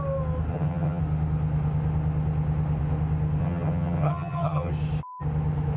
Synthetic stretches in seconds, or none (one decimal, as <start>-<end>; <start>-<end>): 0.5-1.0; 3.4-4.7